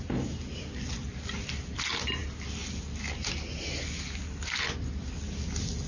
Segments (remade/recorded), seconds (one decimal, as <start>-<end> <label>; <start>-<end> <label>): 0.0-5.9 recorded